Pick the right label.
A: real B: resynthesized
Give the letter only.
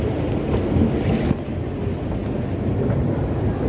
A